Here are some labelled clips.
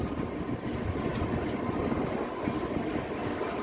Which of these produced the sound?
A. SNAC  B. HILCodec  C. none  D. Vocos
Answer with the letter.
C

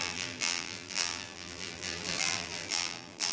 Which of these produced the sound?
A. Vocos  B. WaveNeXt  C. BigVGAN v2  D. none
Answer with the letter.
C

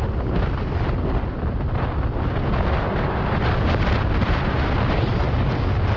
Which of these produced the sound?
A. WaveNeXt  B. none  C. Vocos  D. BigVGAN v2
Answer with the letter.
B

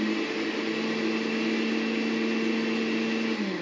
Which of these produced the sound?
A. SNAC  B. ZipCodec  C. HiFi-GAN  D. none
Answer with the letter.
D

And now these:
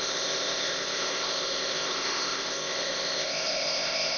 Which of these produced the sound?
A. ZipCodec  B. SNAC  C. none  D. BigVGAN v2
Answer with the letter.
A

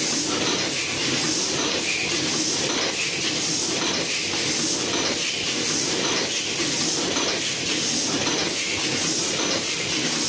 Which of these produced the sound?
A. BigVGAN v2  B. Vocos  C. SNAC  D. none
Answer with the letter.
D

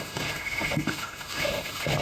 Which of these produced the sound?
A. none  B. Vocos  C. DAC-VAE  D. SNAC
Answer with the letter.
C